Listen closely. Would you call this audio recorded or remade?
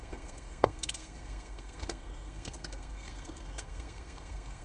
remade